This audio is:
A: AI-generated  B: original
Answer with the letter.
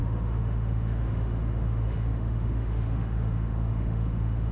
A